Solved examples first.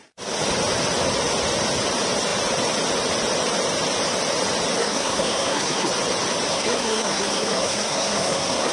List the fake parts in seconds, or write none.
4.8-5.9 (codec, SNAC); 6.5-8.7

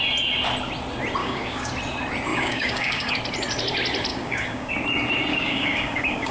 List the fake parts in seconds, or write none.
1.2-1.7 (codec, DAC); 2.3-3.1; 4.1-4.7; 5.3-6.3

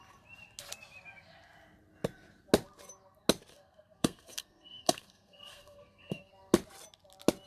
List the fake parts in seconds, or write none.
3.5-6.3 (codec, SNAC)